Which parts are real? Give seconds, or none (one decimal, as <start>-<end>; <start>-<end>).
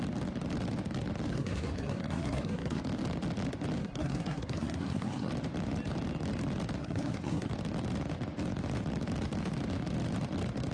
0.0-1.3; 2.8-3.8; 5.3-6.8; 7.5-10.7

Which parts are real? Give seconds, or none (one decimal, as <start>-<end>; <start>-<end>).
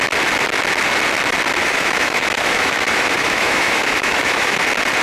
0.0-1.6; 4.6-5.0